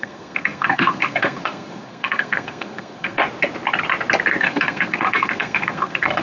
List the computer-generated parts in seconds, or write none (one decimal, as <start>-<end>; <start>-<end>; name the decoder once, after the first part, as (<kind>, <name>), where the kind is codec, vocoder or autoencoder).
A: 0.0-3.2 (codec, SNAC); 4.4-6.2